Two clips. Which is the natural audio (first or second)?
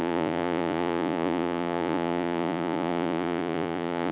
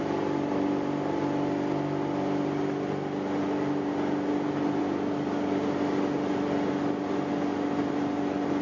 second